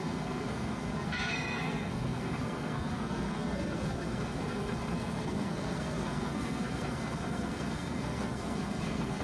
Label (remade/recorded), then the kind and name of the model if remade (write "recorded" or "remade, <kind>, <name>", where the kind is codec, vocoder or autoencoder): remade, codec, SNAC